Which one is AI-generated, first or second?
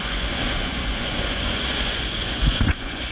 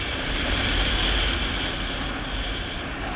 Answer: first